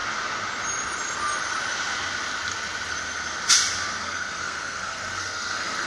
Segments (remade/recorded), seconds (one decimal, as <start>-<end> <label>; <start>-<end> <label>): 0.0-4.0 recorded; 4.0-5.9 remade